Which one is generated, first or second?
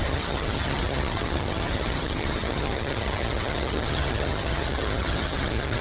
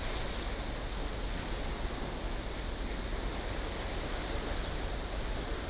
first